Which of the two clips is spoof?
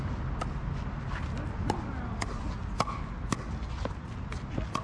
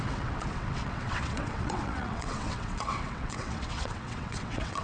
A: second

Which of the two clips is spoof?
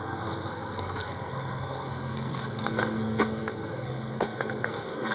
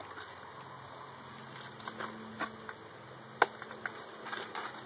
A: first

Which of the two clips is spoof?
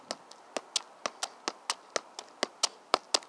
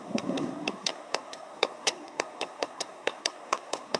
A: second